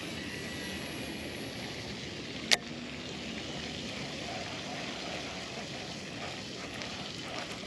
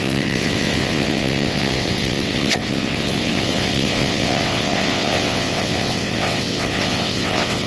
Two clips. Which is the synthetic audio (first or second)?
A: second